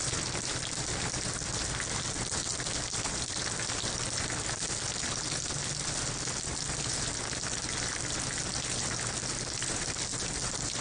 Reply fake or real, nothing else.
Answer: real